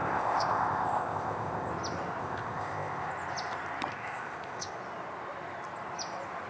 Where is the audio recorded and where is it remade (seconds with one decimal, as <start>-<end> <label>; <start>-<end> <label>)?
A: 0.0-1.7 remade; 1.7-2.2 recorded; 2.2-3.1 remade; 3.1-3.9 recorded; 3.9-4.7 remade; 4.7-6.5 recorded